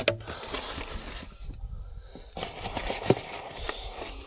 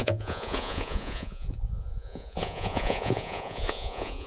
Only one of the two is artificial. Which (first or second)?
second